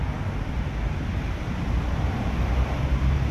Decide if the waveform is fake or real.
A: real